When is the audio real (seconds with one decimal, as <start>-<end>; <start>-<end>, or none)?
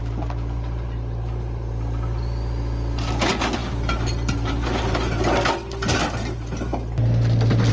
0.0-7.7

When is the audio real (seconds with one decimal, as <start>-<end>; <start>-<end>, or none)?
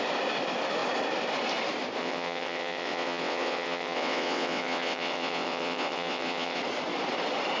0.0-2.0; 6.6-7.6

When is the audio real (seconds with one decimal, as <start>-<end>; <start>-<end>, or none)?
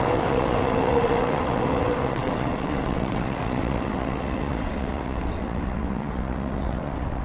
none